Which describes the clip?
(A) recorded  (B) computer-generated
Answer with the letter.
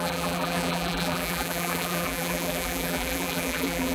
B